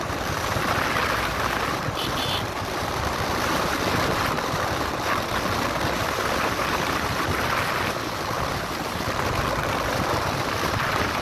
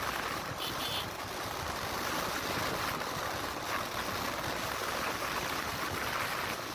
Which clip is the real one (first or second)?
second